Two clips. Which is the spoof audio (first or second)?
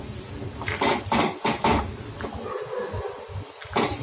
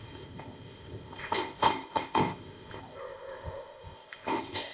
second